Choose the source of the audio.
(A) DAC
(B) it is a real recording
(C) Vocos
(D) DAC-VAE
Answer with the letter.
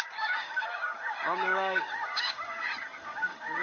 A